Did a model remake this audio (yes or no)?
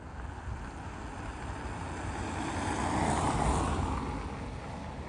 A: no